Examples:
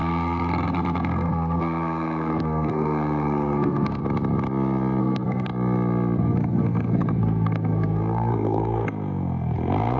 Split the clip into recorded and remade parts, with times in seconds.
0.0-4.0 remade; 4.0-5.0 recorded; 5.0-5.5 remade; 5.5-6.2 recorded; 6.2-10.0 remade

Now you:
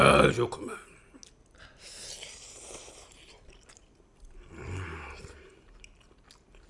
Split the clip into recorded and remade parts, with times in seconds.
0.0-6.7 recorded

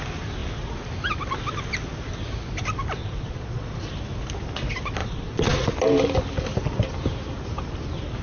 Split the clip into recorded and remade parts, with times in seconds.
0.0-3.0 recorded; 3.0-3.9 remade; 3.9-5.0 recorded; 5.0-5.7 remade; 5.7-8.2 recorded

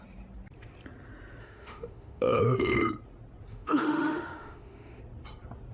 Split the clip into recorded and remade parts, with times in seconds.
0.0-1.4 recorded; 1.4-2.4 remade; 2.4-3.5 recorded; 3.5-5.0 remade; 5.0-5.7 recorded

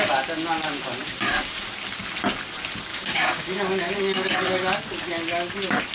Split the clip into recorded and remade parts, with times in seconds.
0.0-2.9 recorded; 2.9-4.0 remade; 4.0-5.9 recorded

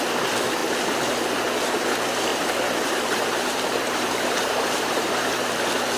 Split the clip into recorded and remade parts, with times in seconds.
0.0-2.3 recorded; 2.3-5.1 remade; 5.1-6.0 recorded